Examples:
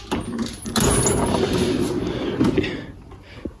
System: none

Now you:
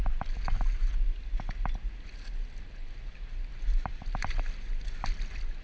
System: none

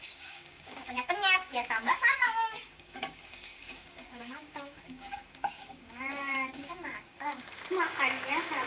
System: codec, DAC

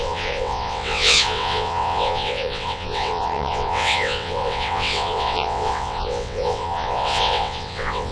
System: vocoder, WaveNeXt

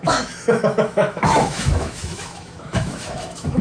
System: autoencoder, DAC-VAE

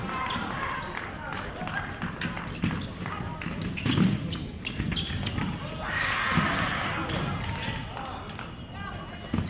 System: none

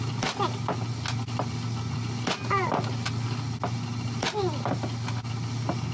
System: none